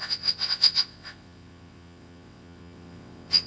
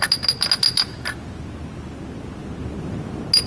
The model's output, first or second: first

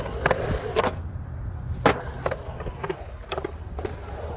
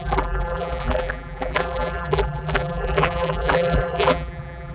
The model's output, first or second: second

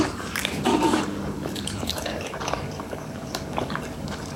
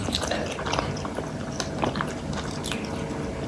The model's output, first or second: first